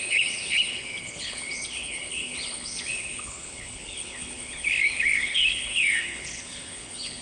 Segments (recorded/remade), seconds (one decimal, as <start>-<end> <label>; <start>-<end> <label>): 0.0-7.2 remade